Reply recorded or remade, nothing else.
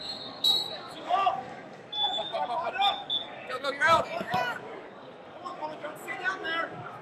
remade